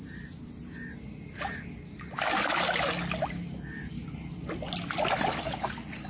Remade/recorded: recorded